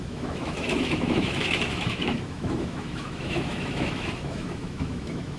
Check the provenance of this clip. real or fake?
fake